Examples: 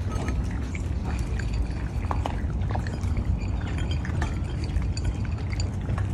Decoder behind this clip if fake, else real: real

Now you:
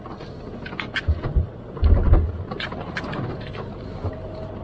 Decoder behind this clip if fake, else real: real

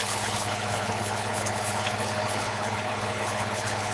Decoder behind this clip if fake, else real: fake, codec, HILCodec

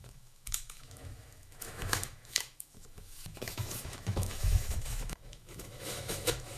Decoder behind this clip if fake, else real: fake, autoencoder, DAC-VAE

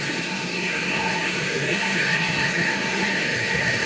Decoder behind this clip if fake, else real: fake, codec, SNAC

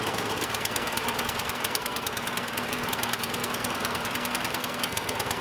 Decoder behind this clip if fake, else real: fake, codec, SNAC